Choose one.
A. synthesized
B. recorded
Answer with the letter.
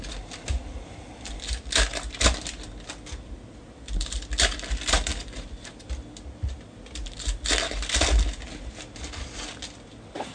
B